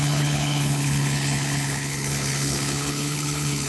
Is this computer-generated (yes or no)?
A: yes